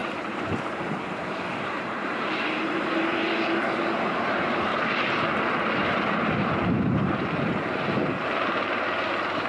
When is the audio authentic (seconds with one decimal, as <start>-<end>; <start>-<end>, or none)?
3.2-4.1; 4.7-5.8